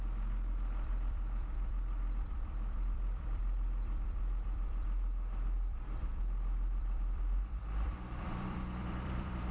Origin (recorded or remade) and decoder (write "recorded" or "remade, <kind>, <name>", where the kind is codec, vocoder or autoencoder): remade, vocoder, BigVGAN v2